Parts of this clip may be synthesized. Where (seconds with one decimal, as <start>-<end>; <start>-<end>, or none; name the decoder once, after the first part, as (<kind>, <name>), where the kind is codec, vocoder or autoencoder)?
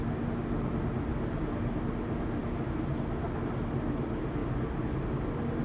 none